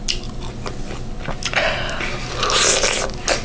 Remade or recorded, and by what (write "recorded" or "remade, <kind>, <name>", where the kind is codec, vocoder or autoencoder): recorded